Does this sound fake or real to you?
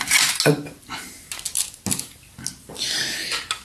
real